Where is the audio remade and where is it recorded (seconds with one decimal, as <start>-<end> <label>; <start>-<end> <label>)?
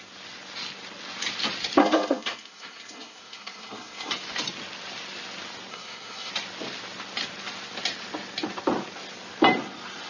0.0-1.8 recorded; 1.8-4.1 remade; 4.1-5.7 recorded; 5.7-6.3 remade; 6.3-10.1 recorded